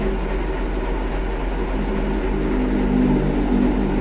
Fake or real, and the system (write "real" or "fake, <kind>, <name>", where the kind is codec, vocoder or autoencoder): real